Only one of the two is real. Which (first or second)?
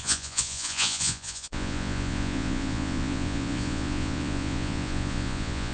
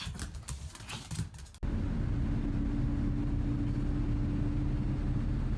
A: second